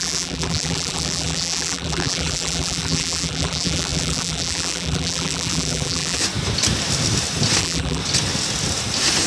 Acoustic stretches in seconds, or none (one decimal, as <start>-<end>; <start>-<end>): 6.2-7.6; 8.0-9.3